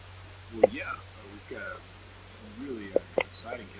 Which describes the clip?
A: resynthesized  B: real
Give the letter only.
B